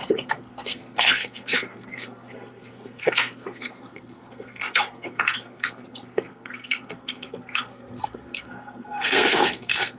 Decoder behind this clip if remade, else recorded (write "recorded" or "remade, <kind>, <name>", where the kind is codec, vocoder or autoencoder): remade, codec, SNAC